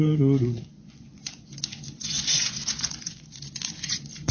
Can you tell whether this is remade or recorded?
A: remade